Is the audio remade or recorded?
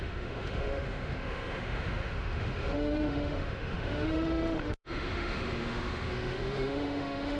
remade